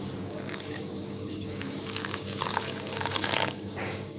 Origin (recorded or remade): remade